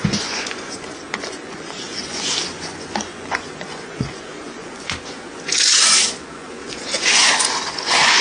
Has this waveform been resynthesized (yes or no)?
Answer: yes